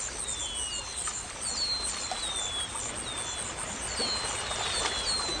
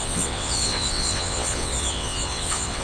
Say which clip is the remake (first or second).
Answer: second